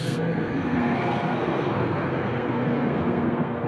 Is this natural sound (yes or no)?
no